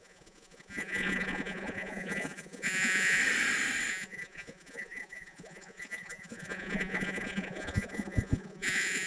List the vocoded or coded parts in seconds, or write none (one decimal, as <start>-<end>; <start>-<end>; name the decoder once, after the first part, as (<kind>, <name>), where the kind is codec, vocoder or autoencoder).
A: 0.0-3.2 (vocoder, Vocos); 3.9-9.1